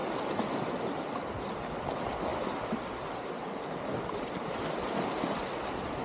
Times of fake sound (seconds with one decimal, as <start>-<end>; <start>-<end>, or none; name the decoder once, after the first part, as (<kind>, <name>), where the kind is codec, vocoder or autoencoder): 0.0-1.6 (vocoder, BigVGAN v2)